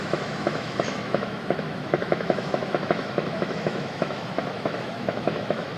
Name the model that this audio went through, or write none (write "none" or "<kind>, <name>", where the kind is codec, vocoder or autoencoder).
autoencoder, DAC-VAE